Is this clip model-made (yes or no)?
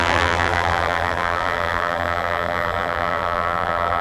yes